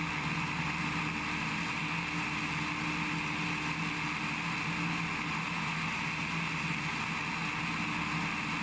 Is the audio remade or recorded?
recorded